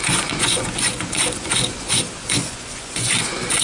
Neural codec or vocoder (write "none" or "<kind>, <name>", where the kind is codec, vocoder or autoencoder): vocoder, Vocos